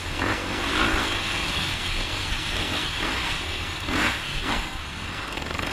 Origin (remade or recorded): remade